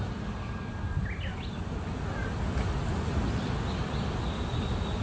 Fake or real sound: real